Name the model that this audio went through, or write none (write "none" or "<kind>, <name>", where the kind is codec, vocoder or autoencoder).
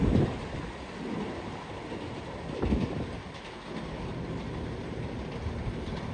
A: none